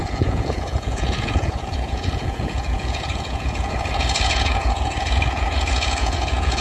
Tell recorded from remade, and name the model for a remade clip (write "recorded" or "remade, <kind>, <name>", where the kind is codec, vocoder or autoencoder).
remade, vocoder, Vocos